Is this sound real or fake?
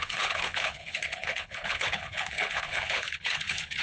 fake